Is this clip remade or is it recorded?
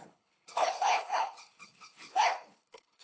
remade